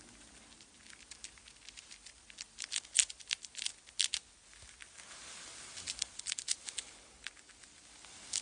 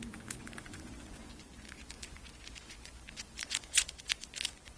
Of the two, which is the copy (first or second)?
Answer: second